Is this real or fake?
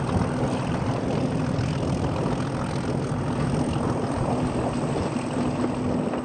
real